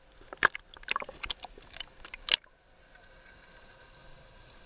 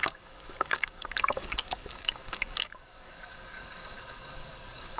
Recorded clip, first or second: first